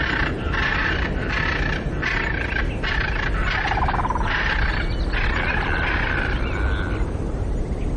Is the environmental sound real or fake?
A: real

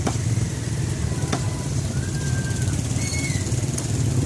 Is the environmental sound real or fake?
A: real